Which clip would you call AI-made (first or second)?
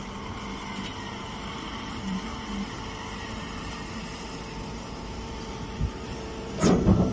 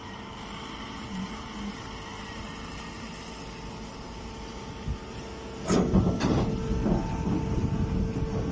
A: first